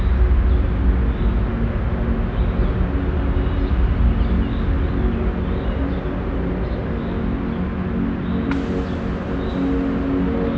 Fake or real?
real